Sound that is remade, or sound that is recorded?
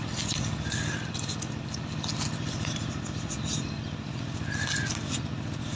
recorded